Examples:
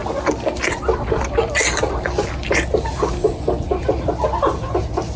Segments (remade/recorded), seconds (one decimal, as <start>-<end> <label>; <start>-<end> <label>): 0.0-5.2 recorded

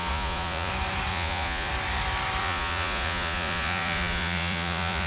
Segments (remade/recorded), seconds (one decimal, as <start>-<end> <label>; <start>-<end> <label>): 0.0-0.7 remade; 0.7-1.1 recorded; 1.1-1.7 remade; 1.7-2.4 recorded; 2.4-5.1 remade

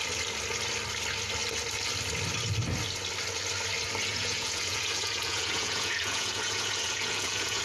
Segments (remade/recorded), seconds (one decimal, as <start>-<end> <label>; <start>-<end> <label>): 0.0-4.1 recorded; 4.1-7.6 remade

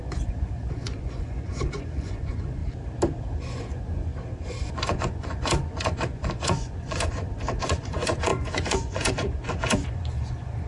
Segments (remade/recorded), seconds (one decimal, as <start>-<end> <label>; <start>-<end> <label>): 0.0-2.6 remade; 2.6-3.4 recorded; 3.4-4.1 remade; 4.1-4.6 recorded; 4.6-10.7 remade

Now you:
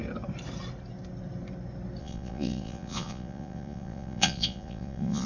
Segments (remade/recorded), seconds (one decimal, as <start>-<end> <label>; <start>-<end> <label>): 0.0-2.0 recorded; 2.0-5.3 remade